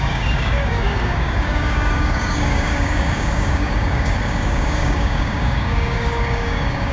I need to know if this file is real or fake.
fake